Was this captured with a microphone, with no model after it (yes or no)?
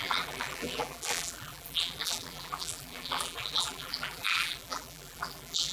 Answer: no